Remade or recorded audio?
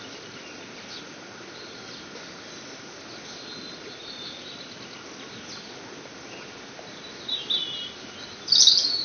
recorded